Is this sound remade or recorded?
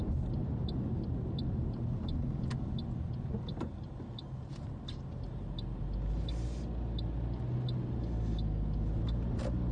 recorded